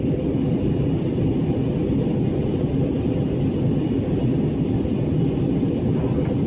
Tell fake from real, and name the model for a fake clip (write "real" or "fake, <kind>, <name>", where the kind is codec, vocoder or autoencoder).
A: real